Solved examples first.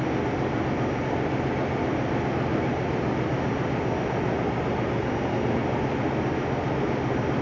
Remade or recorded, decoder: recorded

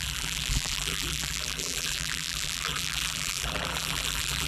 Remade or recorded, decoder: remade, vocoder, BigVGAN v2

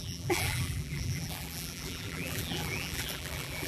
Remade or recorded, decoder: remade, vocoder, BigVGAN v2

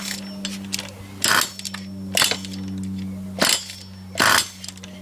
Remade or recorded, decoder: recorded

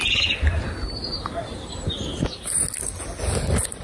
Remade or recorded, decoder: recorded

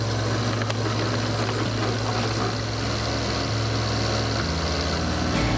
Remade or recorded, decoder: recorded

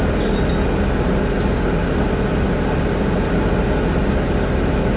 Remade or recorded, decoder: recorded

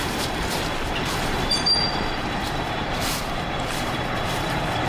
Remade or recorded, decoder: remade, vocoder, BigVGAN v2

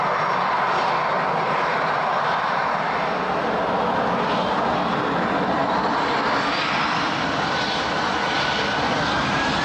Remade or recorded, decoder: recorded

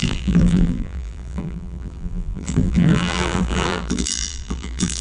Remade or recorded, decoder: remade, vocoder, BigVGAN v2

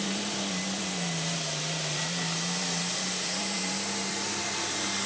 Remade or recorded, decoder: remade, vocoder, BigVGAN v2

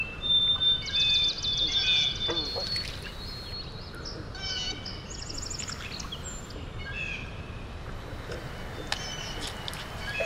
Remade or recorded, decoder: recorded